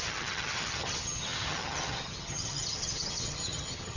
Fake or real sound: fake